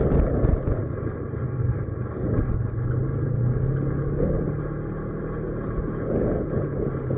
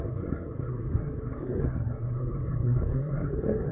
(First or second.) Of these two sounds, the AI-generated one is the second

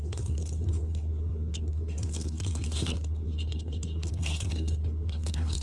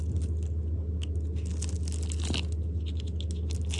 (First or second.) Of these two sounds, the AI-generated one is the first